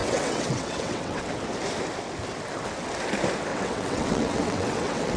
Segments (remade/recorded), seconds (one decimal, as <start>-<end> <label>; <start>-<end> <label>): 0.0-1.3 remade; 1.3-3.5 recorded; 3.5-5.2 remade